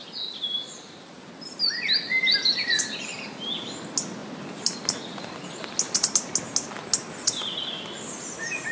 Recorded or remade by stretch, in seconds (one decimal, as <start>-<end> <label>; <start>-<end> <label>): 0.0-1.3 remade; 1.3-8.7 recorded